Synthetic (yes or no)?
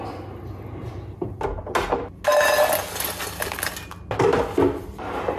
no